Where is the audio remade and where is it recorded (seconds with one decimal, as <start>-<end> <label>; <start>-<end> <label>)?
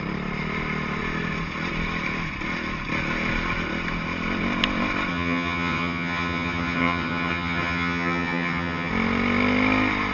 0.0-5.1 recorded; 5.1-8.9 remade; 8.9-10.1 recorded